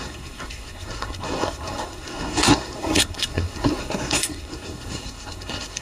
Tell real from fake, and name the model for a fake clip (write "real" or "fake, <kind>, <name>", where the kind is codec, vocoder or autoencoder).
fake, codec, SNAC